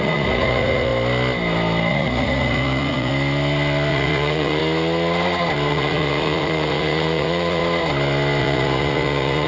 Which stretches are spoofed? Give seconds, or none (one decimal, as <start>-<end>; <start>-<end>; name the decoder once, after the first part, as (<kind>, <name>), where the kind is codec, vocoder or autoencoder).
0.0-0.9 (vocoder, Vocos); 1.9-3.1; 3.9-4.6; 5.7-7.6; 8.4-9.5